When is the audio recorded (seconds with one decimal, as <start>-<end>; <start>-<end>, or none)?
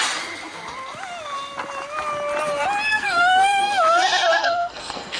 0.0-2.9; 3.7-4.4